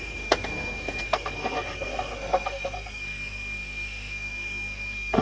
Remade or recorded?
remade